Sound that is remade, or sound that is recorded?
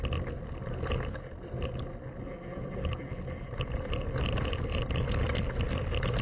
recorded